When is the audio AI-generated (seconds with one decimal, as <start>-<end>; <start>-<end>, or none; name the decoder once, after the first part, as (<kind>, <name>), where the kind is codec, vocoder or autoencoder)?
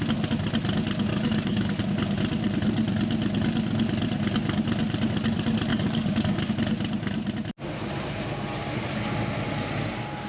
1.1-1.8 (codec, DAC); 5.7-6.5